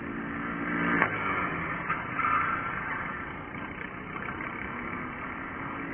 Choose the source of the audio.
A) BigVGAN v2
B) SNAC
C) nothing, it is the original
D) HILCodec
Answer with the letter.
C